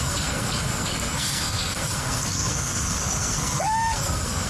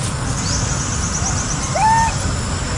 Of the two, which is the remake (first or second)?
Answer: first